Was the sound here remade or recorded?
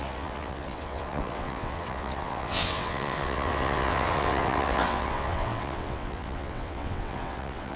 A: remade